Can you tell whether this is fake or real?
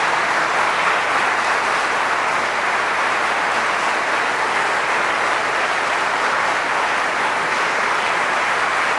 real